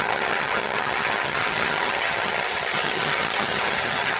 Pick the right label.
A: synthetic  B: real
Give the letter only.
A